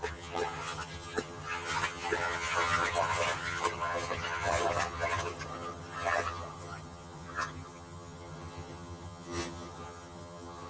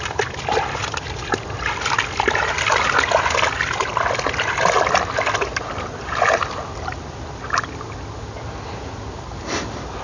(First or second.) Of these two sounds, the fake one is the first